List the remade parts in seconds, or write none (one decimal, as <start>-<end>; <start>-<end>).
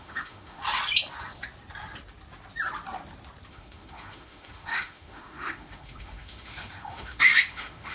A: 0.0-0.6; 3.5-7.9